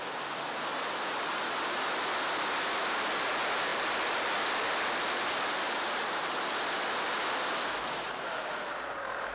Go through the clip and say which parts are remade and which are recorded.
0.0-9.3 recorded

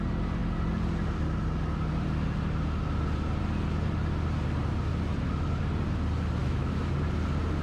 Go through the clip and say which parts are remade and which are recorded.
0.0-6.4 recorded; 6.4-6.9 remade; 6.9-7.6 recorded

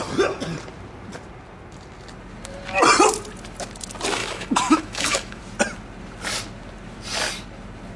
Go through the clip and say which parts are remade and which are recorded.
0.0-4.2 recorded; 4.2-5.4 remade; 5.4-8.0 recorded